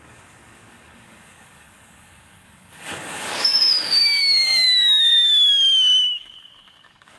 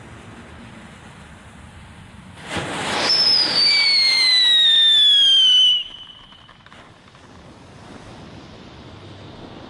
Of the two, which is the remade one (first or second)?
first